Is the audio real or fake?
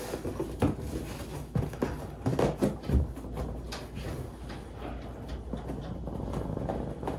real